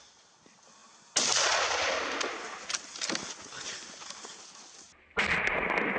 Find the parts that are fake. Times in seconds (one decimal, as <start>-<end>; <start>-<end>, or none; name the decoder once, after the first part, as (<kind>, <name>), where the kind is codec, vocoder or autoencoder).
none